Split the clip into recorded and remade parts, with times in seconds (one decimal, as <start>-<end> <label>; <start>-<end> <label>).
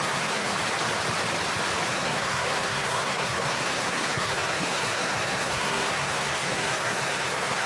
0.0-0.5 remade; 0.5-1.9 recorded; 1.9-7.7 remade